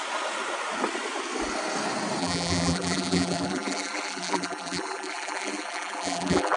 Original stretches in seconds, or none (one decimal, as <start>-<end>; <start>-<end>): 0.0-2.2